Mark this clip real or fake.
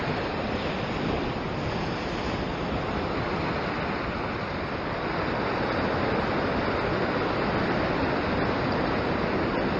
real